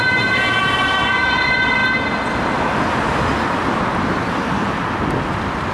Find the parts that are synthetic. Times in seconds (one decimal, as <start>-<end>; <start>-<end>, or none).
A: none